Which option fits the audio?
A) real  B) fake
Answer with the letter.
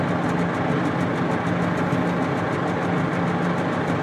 A